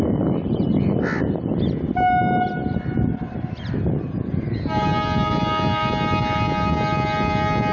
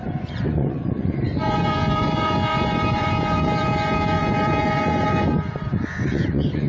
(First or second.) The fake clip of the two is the second